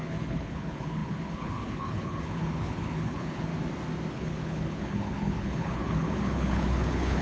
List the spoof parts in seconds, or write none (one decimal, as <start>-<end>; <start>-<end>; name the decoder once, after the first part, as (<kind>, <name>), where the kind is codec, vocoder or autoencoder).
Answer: 0.0-3.5 (codec, HILCodec); 4.1-7.2